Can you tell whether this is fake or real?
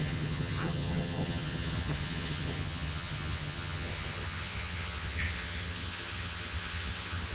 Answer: fake